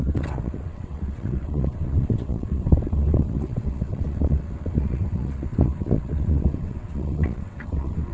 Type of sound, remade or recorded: remade